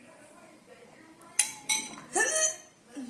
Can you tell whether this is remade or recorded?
remade